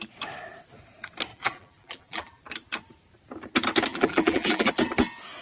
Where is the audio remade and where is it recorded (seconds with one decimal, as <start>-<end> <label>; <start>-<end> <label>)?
0.0-1.3 recorded; 1.3-2.4 remade; 2.4-3.9 recorded; 3.9-4.7 remade; 4.7-5.4 recorded